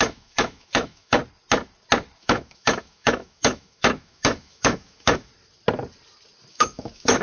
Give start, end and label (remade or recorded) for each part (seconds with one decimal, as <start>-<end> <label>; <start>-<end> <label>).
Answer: 0.0-1.2 remade; 1.2-2.2 recorded; 2.2-5.3 remade; 5.3-6.5 recorded; 6.5-7.2 remade